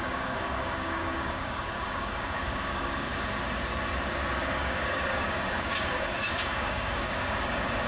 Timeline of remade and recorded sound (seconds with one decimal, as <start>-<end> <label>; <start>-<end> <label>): 0.0-3.1 remade; 3.1-4.4 recorded; 4.4-7.9 remade